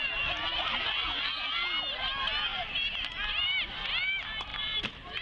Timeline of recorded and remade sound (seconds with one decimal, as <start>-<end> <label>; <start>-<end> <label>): 0.0-2.5 recorded; 2.5-3.9 remade; 3.9-4.5 recorded; 4.5-5.2 remade